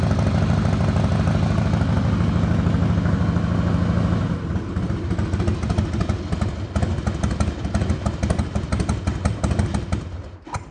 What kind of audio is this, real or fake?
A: real